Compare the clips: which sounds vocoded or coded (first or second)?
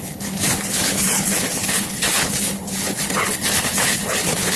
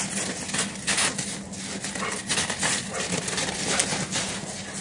first